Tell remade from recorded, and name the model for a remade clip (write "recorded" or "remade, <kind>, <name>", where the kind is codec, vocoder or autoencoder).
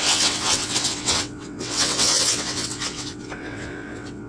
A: remade, vocoder, WaveNeXt